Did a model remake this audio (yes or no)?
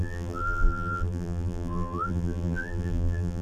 yes